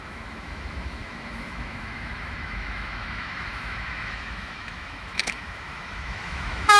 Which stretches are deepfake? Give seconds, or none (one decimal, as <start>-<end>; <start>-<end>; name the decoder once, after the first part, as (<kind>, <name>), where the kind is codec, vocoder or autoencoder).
0.0-6.8 (autoencoder, DAC-VAE)